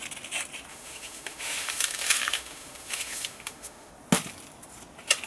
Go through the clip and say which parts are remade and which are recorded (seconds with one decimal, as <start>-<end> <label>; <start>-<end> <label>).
0.0-0.7 recorded; 0.7-3.9 remade; 3.9-5.3 recorded